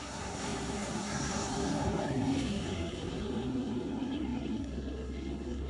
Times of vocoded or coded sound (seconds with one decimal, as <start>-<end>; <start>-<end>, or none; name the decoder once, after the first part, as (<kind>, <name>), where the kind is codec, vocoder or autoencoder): 0.0-5.7 (codec, SNAC)

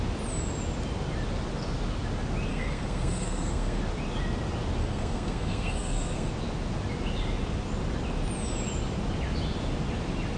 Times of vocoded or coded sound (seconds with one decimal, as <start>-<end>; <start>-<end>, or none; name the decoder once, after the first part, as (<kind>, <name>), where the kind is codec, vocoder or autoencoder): 2.5-3.8 (codec, SNAC); 4.8-6.3

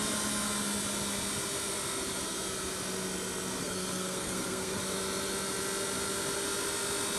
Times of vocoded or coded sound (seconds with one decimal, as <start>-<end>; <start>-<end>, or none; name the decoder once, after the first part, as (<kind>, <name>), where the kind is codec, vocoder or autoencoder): 3.6-4.8 (codec, SNAC)